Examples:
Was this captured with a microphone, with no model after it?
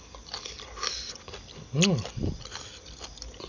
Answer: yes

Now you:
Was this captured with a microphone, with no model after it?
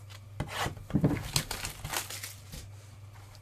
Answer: yes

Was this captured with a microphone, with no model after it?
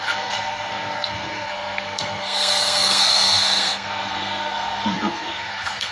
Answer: no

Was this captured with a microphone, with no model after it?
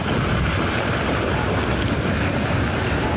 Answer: yes